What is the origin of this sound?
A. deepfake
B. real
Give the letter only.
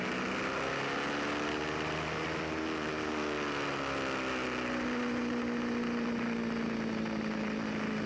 B